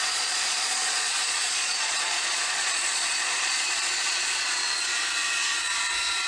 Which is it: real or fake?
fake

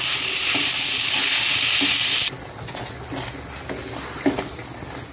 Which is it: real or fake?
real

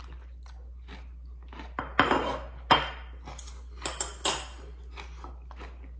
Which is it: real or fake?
real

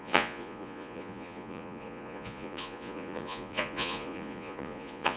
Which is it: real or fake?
fake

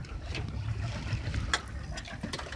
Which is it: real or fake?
real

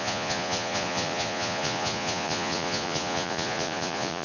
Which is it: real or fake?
fake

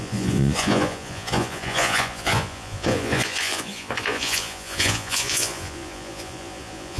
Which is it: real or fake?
fake